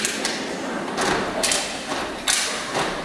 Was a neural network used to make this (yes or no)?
no